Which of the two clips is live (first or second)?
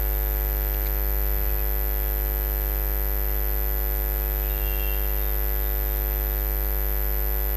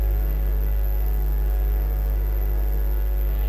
first